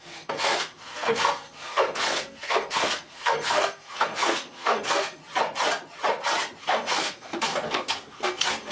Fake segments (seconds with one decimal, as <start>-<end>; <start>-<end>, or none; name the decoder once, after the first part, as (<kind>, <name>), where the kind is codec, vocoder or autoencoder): 0.0-5.2 (codec, SNAC); 6.6-8.7